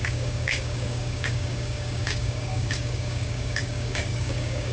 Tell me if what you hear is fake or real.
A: fake